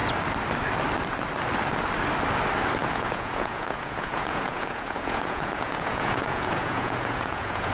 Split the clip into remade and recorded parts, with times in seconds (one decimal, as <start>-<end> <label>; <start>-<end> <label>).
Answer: 0.0-2.8 recorded; 2.8-7.7 remade

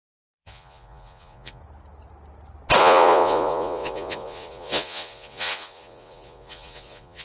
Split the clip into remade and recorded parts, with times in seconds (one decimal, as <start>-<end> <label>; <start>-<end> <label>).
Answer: 0.0-1.6 remade; 1.6-2.8 recorded; 2.8-7.2 remade